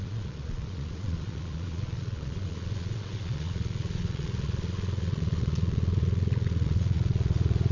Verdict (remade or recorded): remade